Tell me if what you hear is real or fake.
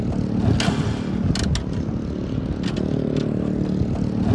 real